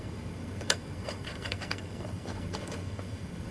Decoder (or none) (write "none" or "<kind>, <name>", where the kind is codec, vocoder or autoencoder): codec, SNAC